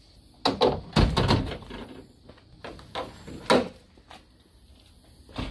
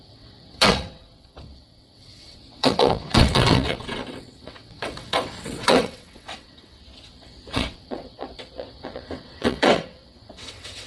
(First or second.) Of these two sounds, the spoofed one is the second